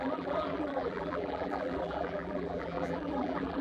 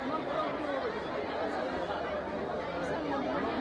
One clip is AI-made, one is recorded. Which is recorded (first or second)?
second